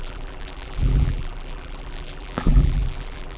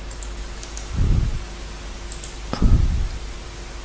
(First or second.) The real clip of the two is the second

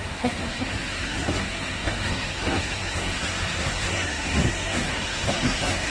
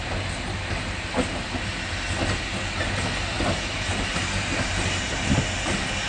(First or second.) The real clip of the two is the second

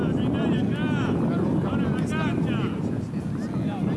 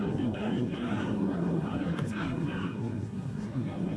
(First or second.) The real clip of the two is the first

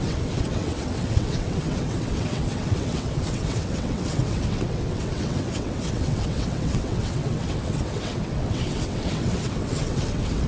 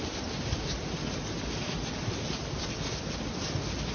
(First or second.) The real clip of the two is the second